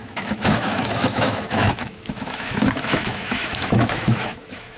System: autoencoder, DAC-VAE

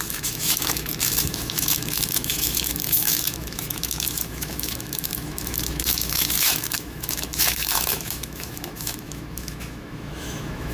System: autoencoder, DAC-VAE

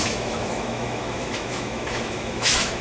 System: autoencoder, DAC-VAE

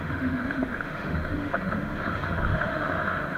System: autoencoder, DAC-VAE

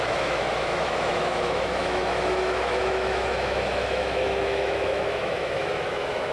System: autoencoder, DAC-VAE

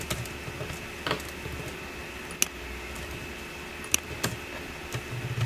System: none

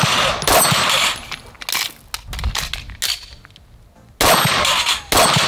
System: none